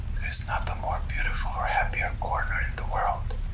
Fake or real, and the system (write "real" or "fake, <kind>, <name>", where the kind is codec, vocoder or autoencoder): real